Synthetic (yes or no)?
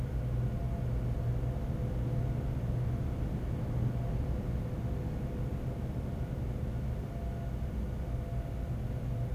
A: no